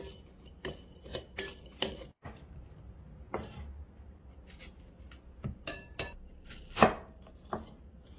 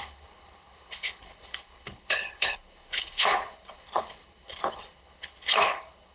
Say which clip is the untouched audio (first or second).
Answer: first